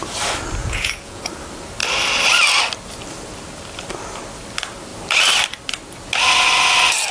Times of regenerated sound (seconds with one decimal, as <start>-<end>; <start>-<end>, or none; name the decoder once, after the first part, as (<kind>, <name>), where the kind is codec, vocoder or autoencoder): 0.6-1.2 (vocoder, Vocos)